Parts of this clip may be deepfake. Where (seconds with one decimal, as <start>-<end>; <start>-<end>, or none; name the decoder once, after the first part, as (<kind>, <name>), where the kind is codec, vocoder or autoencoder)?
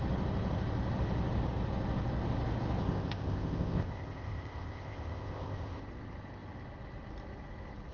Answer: 2.8-5.8 (codec, ZipCodec)